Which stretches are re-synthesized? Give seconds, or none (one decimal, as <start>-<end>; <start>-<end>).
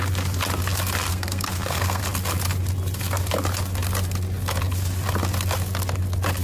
1.1-2.0